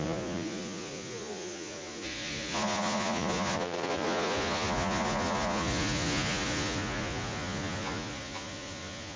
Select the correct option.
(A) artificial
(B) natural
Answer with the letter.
A